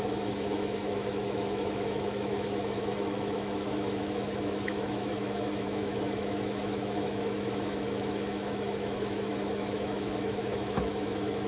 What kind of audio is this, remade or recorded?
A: remade